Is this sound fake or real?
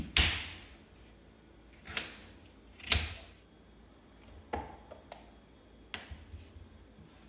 real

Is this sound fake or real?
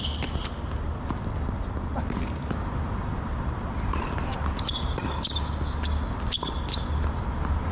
real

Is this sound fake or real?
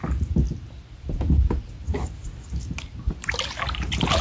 real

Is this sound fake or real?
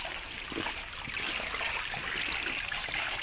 real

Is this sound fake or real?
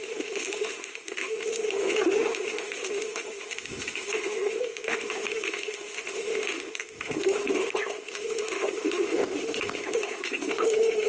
fake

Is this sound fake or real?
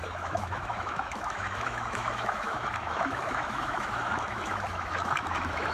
fake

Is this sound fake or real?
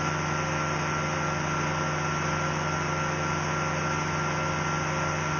real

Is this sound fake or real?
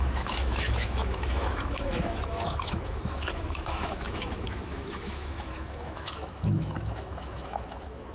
fake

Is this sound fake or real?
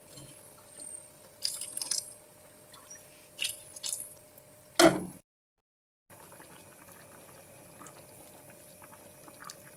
real